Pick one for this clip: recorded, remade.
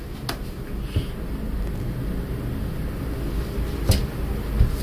recorded